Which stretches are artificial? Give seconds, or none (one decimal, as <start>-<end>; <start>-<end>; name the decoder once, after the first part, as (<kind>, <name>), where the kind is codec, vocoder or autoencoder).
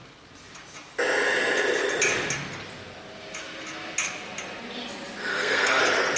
5.3-5.8 (codec, SNAC)